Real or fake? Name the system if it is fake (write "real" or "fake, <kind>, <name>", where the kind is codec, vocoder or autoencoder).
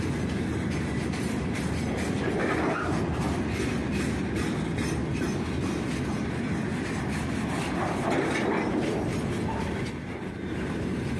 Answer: real